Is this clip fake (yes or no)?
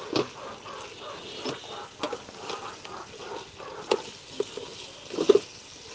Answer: no